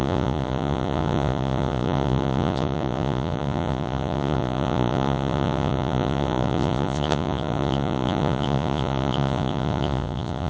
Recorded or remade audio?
remade